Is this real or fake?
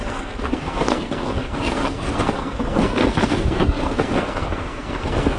fake